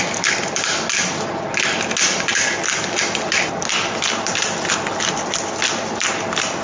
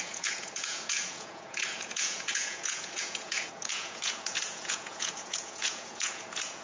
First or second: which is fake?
second